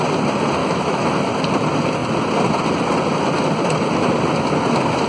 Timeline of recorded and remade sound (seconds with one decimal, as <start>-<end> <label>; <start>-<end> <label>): 0.0-0.6 recorded; 0.6-1.1 remade; 1.1-5.1 recorded